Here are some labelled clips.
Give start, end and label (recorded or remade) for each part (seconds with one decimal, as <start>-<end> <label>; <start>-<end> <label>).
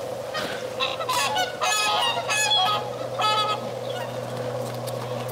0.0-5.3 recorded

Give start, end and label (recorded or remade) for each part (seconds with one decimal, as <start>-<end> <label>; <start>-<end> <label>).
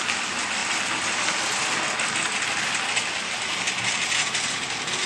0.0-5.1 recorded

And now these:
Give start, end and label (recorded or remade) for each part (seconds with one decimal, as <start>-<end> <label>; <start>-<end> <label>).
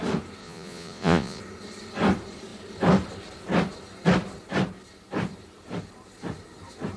0.0-0.4 recorded; 0.4-1.4 remade; 1.4-7.0 recorded